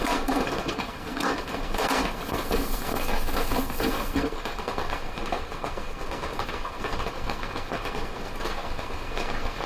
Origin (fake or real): fake